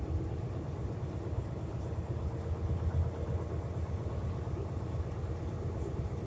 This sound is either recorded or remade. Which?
recorded